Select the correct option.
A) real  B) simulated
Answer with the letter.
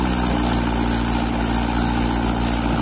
A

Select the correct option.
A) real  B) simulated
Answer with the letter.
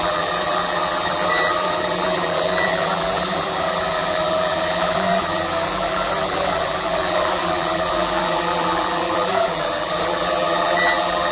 B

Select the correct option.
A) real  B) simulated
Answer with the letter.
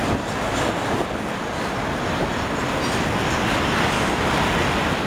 A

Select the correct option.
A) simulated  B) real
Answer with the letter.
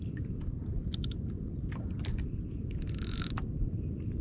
A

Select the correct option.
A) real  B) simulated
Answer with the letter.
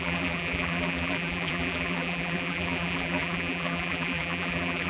B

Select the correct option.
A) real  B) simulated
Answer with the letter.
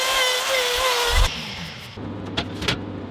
A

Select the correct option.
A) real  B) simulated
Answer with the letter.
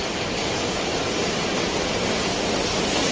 A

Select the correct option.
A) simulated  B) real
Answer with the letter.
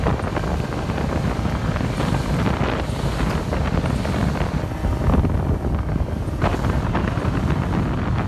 B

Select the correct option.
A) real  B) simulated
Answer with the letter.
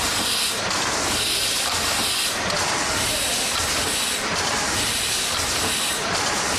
B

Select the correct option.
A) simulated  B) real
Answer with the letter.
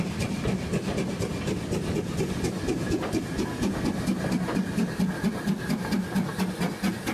B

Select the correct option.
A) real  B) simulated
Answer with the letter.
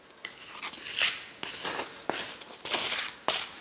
A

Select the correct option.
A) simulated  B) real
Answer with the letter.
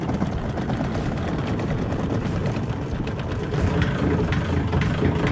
B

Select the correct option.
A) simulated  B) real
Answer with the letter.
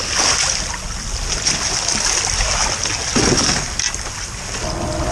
B